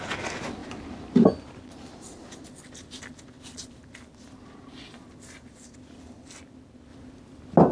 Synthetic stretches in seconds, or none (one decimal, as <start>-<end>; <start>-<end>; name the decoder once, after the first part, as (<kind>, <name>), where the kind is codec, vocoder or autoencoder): 0.6-2.4 (vocoder, BigVGAN v2)